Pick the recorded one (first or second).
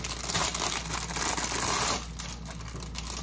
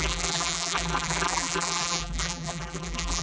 first